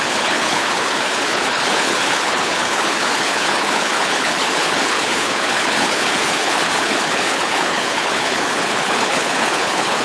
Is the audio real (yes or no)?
no